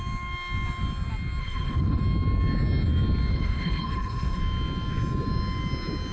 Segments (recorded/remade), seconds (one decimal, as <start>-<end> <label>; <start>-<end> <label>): 0.0-1.4 recorded; 1.4-2.0 remade; 2.0-3.3 recorded; 3.3-4.4 remade; 4.4-6.1 recorded